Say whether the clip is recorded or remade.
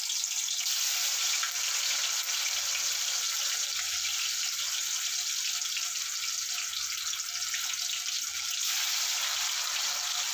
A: recorded